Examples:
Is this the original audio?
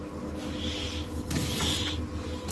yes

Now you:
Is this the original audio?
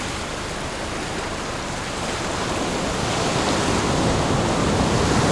no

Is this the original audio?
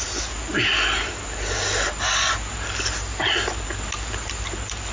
yes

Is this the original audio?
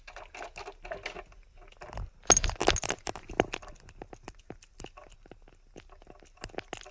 yes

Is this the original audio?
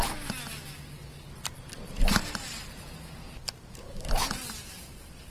yes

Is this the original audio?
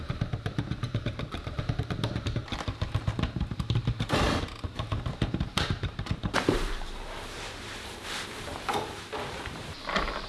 no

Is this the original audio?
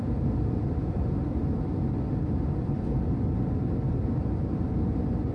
no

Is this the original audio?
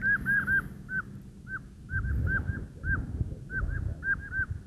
yes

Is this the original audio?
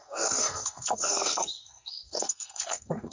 no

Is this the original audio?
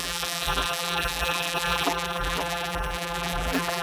no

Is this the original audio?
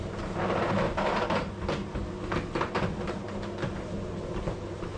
yes